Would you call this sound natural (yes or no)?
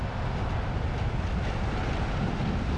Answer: yes